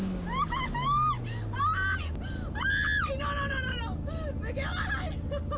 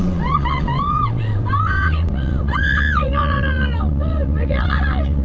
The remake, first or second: second